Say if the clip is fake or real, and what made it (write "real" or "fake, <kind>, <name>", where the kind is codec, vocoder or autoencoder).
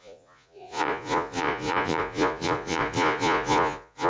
fake, vocoder, Vocos